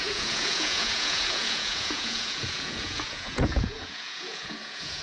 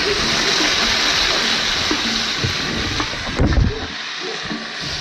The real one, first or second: second